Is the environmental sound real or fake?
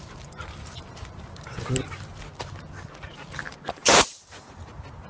real